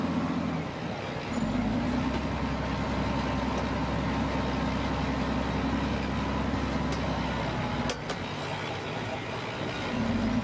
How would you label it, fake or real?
real